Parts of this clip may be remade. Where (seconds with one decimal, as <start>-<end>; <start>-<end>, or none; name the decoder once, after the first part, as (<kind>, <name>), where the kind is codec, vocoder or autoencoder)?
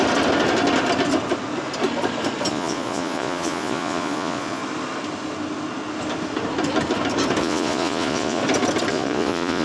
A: 2.5-4.6 (vocoder, Vocos); 7.4-8.4; 8.9-9.6